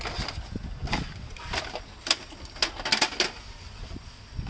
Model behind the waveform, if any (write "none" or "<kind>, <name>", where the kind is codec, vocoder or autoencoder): none